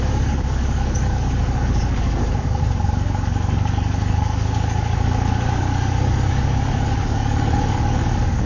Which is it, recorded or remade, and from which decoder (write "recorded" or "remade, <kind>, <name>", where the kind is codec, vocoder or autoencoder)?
remade, codec, DAC